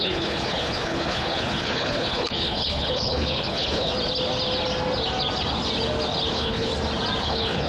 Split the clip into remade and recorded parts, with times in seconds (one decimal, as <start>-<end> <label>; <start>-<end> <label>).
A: 0.0-3.9 remade; 3.9-6.3 recorded; 6.3-6.7 remade; 6.7-7.2 recorded; 7.2-7.7 remade